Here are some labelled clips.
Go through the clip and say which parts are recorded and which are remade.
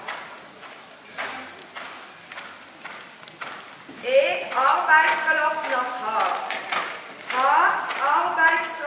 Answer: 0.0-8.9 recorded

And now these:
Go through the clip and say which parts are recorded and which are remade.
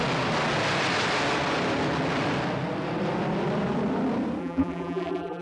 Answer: 0.0-4.4 recorded; 4.4-5.4 remade